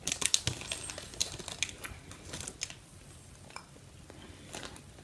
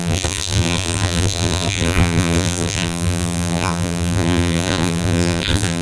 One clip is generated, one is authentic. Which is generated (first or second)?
second